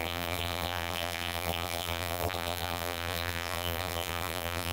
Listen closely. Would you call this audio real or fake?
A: fake